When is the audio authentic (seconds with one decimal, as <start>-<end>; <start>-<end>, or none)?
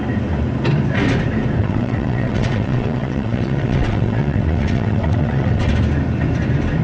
0.0-1.6; 5.7-6.8